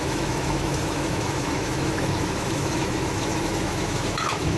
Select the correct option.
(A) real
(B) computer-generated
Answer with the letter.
B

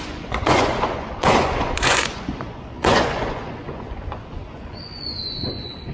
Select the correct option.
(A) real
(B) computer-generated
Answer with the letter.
B